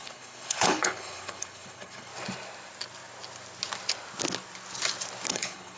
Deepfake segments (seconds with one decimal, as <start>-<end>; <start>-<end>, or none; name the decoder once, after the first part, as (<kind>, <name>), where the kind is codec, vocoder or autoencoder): 0.0-2.1 (codec, HILCodec); 5.3-5.8